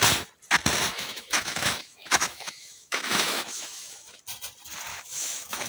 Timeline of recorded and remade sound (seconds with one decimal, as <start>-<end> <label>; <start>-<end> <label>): 0.0-0.9 recorded; 0.9-4.2 remade; 4.2-4.9 recorded; 4.9-5.7 remade